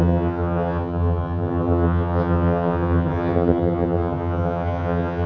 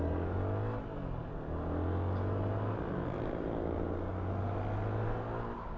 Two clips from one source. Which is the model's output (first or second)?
first